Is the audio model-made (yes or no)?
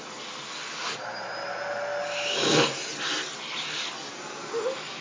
no